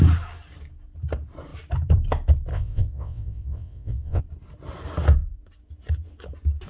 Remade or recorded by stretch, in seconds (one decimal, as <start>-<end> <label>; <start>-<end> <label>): 0.0-2.5 recorded; 2.5-4.2 remade; 4.2-6.7 recorded